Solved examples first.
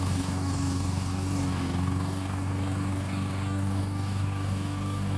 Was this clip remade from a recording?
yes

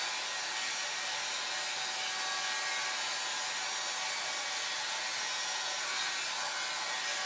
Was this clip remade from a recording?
no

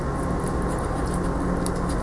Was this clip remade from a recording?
no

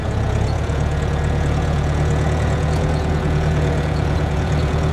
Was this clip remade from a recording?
yes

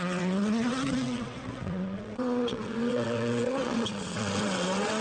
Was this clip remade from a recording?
yes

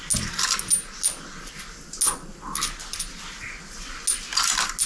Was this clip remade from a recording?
no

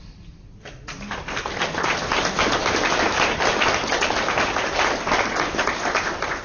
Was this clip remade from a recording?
no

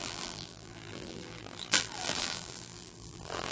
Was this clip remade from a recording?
yes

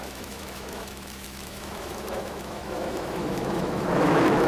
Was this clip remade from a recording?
yes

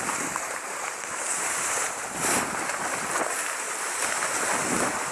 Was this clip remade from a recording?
yes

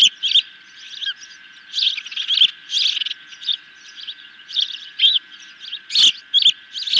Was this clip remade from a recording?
no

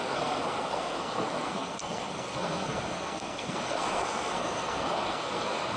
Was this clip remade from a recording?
yes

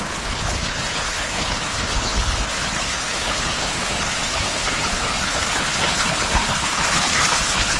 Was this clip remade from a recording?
yes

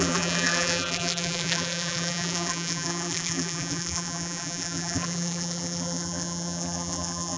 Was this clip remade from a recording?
yes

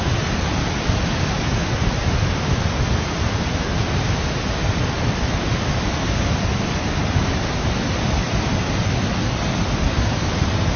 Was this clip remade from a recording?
no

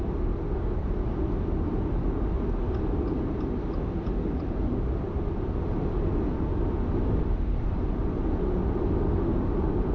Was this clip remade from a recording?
no